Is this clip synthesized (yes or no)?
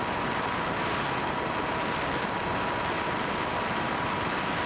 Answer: no